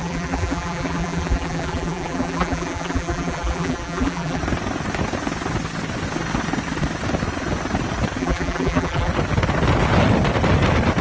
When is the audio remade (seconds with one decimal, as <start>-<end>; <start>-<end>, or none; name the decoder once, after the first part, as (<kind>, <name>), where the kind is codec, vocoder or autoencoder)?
0.0-4.4 (vocoder, BigVGAN v2); 8.2-9.1